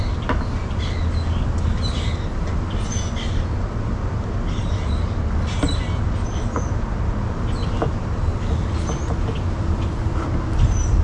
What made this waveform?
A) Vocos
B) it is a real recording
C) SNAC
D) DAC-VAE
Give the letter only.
B